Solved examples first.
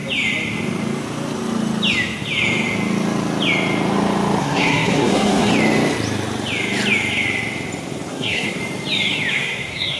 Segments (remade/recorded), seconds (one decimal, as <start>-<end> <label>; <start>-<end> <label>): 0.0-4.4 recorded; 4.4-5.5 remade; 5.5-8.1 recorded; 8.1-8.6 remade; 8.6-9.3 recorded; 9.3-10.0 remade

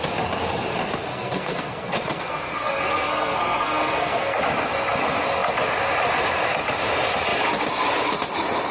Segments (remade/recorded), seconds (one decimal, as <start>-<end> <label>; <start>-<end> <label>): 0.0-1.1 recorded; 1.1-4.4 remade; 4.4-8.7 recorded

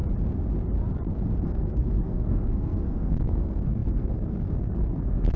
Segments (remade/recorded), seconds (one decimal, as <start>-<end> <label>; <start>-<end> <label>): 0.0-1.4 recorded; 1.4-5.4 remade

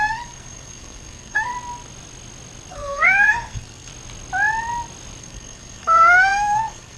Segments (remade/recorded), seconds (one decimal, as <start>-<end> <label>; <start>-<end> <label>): 0.0-1.5 remade; 1.5-2.7 recorded; 2.7-3.9 remade; 3.9-5.2 recorded; 5.2-7.0 remade

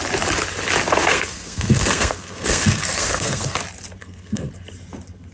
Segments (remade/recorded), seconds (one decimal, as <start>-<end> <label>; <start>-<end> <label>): 0.0-1.1 recorded; 1.1-3.6 remade; 3.6-4.0 recorded; 4.0-4.5 remade; 4.5-5.3 recorded

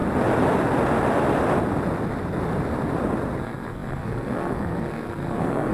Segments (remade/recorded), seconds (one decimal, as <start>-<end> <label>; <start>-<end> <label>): 0.0-3.4 recorded; 3.4-5.7 remade

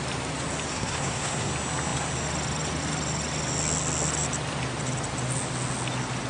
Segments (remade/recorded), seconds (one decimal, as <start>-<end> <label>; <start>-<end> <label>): 0.0-0.7 recorded; 0.7-1.5 remade; 1.5-6.3 recorded

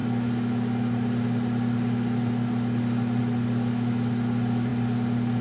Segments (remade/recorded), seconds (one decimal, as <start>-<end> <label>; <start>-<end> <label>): 0.0-5.4 recorded